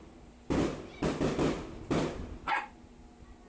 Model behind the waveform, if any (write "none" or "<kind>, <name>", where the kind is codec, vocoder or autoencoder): none